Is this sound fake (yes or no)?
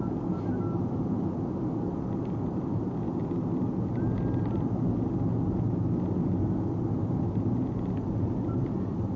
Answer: no